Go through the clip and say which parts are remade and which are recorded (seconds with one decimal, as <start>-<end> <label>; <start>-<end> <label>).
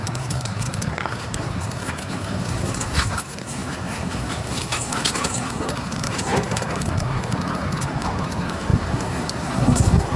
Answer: 0.0-10.2 remade